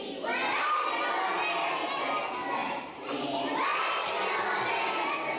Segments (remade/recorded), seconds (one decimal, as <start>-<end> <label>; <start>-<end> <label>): 0.0-2.6 recorded; 2.6-3.3 remade; 3.3-5.4 recorded